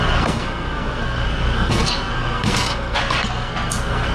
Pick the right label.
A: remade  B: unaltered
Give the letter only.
A